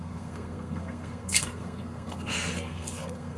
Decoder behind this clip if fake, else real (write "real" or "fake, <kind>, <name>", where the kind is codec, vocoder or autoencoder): fake, codec, SNAC